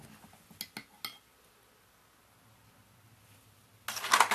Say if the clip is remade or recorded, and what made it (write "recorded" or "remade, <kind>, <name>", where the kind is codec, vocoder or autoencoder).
recorded